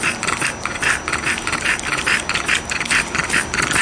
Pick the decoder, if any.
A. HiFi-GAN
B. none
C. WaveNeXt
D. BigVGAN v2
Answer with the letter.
B